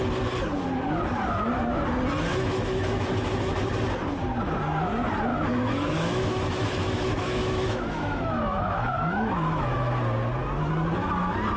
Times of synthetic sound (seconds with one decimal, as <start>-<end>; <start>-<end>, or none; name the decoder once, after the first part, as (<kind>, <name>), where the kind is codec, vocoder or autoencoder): 2.3-3.5 (autoencoder, DAC-VAE); 5.3-9.9